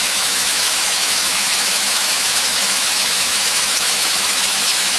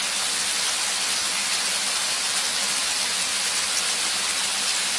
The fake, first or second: first